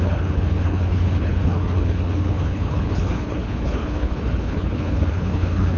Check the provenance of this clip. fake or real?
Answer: fake